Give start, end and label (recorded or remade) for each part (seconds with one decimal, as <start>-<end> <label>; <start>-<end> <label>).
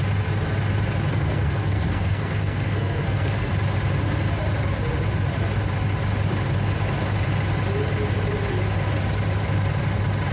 0.0-1.1 recorded; 1.1-3.5 remade; 3.5-10.3 recorded